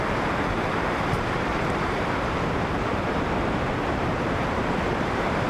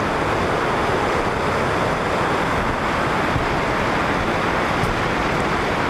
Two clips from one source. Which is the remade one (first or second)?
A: first